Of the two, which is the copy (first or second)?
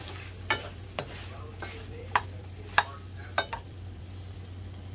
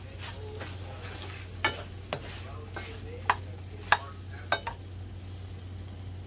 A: first